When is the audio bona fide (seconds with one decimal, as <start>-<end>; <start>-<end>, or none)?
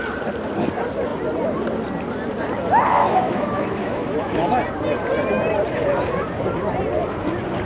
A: 0.0-3.0; 4.6-7.7